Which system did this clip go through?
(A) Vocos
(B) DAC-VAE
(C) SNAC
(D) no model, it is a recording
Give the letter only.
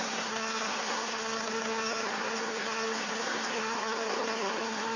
C